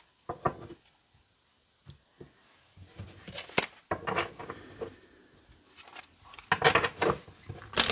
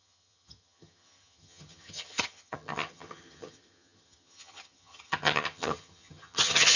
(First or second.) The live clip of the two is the first